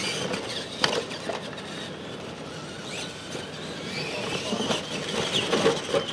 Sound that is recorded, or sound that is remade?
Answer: recorded